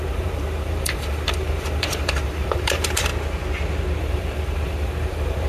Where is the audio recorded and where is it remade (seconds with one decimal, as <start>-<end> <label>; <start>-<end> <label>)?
0.0-3.1 remade; 3.1-4.0 recorded; 4.0-5.5 remade